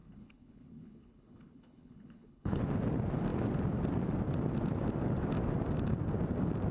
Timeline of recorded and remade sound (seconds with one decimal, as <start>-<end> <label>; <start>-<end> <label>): 0.0-2.6 remade; 2.6-6.7 recorded